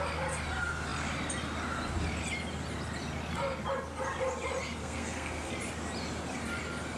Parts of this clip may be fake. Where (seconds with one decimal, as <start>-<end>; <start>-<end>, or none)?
4.8-5.5